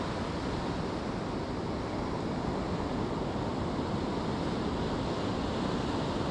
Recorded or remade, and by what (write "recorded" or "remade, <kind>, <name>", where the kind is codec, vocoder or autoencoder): recorded